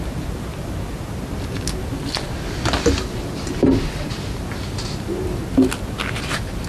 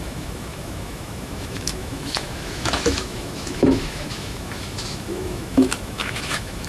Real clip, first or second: first